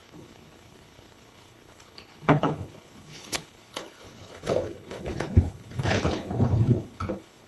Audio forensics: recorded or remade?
remade